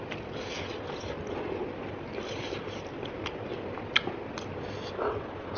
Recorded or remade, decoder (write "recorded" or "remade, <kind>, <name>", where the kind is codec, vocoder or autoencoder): recorded